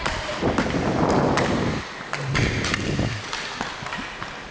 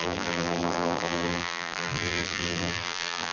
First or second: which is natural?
first